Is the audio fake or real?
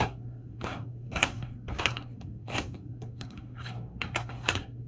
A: fake